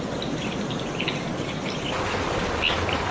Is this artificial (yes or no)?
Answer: no